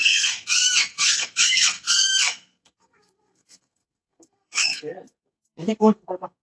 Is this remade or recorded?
remade